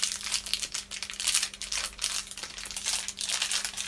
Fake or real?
real